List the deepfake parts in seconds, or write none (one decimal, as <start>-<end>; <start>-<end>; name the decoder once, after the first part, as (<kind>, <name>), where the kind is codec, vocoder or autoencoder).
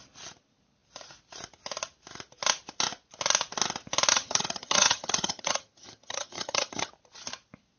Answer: 4.1-6.9 (vocoder, HiFi-GAN)